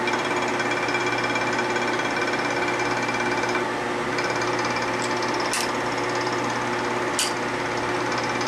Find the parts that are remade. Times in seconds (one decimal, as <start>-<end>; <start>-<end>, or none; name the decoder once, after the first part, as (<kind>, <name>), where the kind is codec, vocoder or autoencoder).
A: none